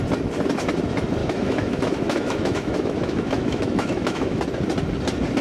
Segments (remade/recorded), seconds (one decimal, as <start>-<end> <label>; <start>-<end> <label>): 0.0-1.2 recorded; 1.2-4.4 remade; 4.4-5.4 recorded